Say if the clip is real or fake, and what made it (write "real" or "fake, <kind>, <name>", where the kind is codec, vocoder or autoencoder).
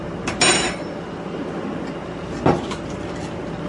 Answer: real